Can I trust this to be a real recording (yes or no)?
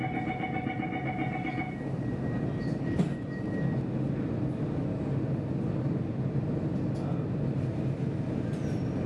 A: yes